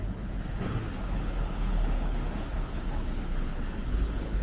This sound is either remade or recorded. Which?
remade